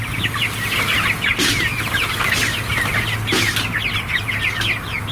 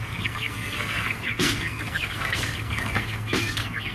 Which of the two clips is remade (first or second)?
second